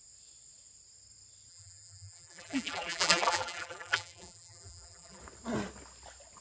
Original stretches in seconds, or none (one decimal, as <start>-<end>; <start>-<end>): 0.0-1.5; 5.2-6.4